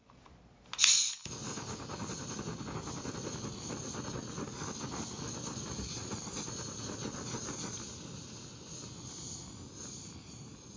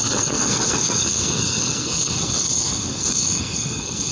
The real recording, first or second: first